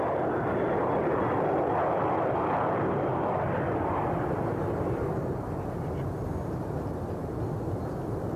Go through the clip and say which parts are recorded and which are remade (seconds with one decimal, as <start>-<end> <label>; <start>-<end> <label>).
0.0-8.4 recorded